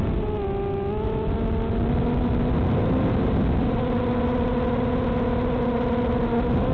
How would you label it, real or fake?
real